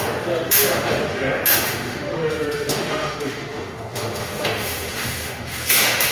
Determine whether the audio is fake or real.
fake